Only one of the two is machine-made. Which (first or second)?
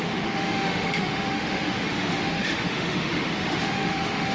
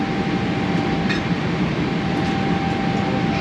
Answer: first